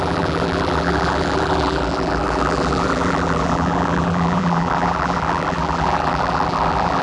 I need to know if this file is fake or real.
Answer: fake